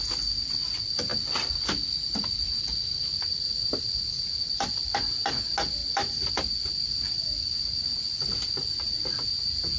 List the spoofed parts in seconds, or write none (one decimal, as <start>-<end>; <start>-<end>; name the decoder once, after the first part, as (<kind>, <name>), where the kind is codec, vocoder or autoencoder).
none